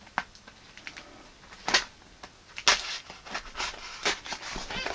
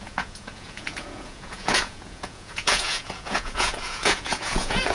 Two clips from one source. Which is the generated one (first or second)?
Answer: second